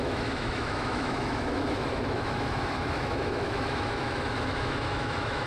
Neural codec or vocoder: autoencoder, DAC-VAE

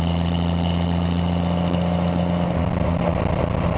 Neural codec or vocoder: none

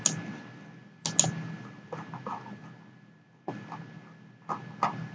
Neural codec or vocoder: none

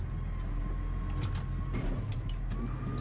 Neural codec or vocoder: none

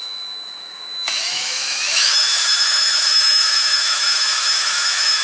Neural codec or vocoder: autoencoder, DAC-VAE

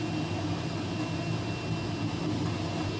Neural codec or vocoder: none